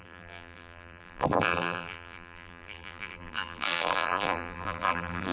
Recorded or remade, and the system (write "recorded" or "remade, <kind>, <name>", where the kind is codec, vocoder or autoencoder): remade, vocoder, BigVGAN v2